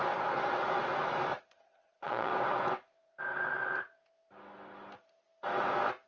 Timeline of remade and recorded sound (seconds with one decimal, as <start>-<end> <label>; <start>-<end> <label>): 0.0-1.4 recorded; 1.4-2.3 remade; 2.3-6.1 recorded